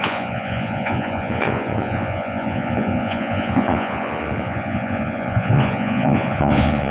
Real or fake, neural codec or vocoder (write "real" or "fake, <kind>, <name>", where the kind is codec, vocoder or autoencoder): fake, vocoder, Vocos